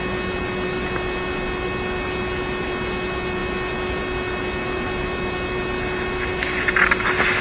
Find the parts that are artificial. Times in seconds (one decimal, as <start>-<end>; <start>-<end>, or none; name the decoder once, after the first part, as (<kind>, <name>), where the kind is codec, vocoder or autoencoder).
none